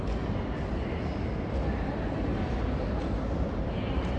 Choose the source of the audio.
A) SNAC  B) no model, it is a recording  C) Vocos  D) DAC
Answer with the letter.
B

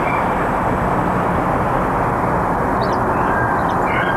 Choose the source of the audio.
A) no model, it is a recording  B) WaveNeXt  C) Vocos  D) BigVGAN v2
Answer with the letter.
A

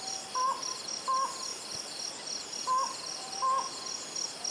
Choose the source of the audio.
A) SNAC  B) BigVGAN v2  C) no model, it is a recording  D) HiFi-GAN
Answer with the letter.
C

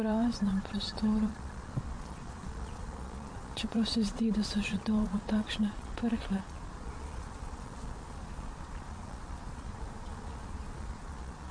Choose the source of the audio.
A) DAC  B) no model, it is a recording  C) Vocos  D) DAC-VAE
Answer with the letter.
C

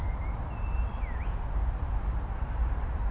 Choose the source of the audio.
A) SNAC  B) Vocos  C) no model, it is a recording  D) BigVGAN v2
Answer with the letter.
D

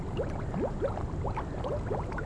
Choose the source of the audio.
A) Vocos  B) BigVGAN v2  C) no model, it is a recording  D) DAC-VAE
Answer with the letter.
C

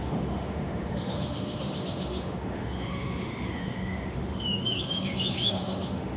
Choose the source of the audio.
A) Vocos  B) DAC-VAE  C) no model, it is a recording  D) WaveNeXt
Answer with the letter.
B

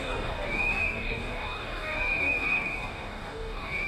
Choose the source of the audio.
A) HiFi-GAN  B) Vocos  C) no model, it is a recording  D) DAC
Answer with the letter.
D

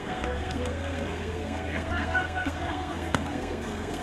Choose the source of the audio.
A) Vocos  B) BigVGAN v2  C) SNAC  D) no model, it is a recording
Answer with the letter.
C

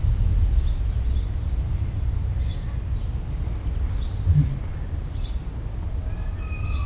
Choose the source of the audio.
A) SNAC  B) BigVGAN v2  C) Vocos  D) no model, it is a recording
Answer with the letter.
D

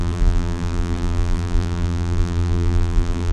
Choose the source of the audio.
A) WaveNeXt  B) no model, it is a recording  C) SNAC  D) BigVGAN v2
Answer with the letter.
D